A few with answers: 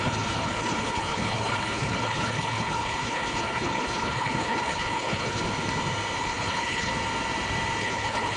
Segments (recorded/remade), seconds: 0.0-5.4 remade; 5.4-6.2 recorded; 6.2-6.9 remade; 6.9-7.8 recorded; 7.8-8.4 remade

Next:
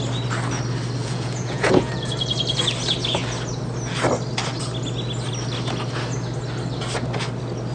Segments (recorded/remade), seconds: 0.0-1.0 recorded; 1.0-2.1 remade; 2.1-7.7 recorded

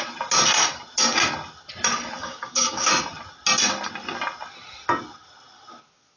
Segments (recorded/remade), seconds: 0.0-2.2 recorded; 2.2-2.9 remade; 2.9-6.2 recorded

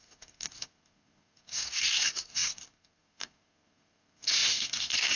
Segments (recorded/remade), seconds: 0.0-5.2 remade

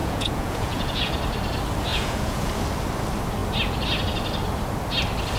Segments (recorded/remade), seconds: 0.0-1.1 remade; 1.1-1.9 recorded; 1.9-2.5 remade; 2.5-5.4 recorded

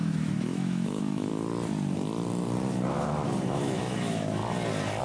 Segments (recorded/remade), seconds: 0.0-1.3 remade; 1.3-3.5 recorded; 3.5-4.4 remade; 4.4-5.0 recorded